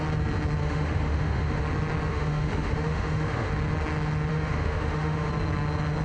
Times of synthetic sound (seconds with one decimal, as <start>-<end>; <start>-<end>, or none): 0.6-1.6; 2.1-3.5; 4.3-5.3